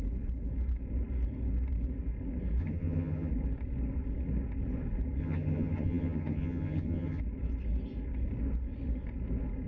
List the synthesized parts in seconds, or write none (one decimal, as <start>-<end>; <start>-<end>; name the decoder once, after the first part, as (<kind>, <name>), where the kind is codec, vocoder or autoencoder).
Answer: 2.6-3.3 (vocoder, HiFi-GAN); 5.2-7.2